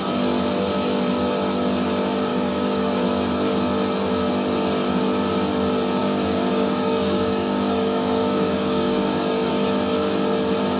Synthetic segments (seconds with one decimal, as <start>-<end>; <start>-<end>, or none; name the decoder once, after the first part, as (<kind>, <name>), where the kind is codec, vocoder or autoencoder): 2.3-2.9 (codec, DAC); 6.0-9.5